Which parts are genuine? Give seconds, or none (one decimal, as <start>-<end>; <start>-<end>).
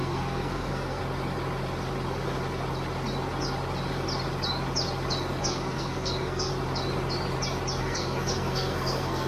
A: 1.0-5.4; 6.5-7.8